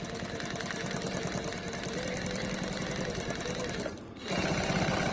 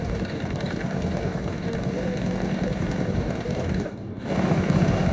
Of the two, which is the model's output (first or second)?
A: second